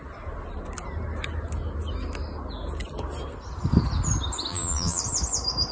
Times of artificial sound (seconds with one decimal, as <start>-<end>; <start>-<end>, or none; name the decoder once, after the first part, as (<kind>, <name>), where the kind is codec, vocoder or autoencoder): 4.5-5.0 (vocoder, BigVGAN v2)